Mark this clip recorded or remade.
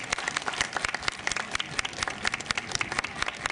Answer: recorded